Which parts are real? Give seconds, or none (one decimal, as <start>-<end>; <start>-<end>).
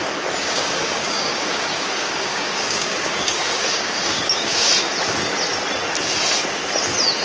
0.0-0.4; 4.7-7.2